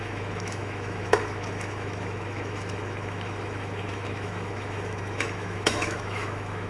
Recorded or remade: remade